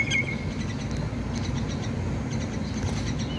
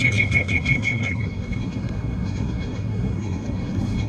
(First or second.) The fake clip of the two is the second